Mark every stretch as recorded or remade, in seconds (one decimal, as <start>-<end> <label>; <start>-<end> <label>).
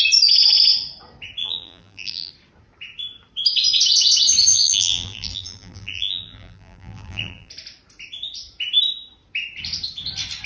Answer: 0.0-1.4 recorded; 1.4-2.3 remade; 2.3-4.5 recorded; 4.5-7.5 remade; 7.5-10.5 recorded